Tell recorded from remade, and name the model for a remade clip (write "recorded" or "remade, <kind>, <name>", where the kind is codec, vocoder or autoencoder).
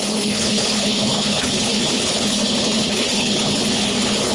remade, codec, HILCodec